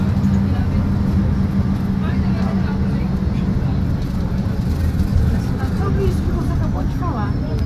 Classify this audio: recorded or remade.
recorded